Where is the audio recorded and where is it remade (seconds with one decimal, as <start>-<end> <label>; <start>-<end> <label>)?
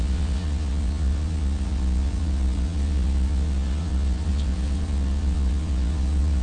0.0-6.4 remade